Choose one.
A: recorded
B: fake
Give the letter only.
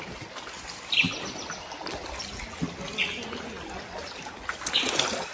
A